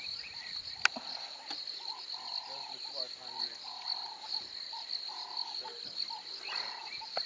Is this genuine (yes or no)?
yes